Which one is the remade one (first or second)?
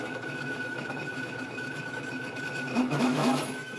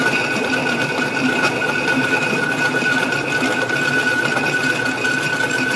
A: first